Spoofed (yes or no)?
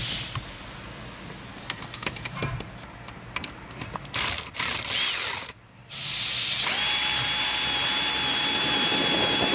no